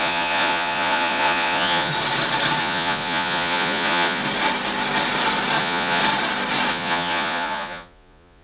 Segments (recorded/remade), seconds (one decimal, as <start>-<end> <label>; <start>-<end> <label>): 0.0-1.9 remade; 1.9-2.6 recorded; 2.6-4.2 remade; 4.2-5.6 recorded; 5.6-6.0 remade; 6.0-6.7 recorded; 6.7-8.4 remade